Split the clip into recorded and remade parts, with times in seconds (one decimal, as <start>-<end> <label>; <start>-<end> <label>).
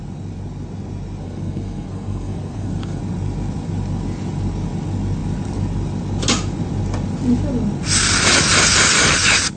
0.0-1.2 recorded; 1.2-3.0 remade; 3.0-9.6 recorded